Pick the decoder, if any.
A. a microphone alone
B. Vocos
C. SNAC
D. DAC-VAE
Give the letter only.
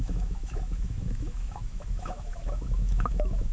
D